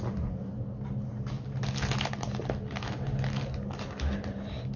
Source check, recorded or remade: recorded